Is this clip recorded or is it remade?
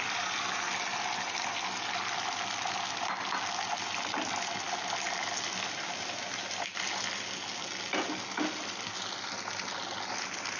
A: recorded